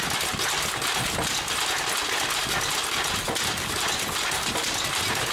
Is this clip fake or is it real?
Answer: real